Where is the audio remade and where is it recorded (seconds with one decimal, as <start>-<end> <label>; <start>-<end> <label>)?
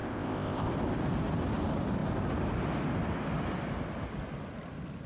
0.0-0.7 remade; 0.7-5.1 recorded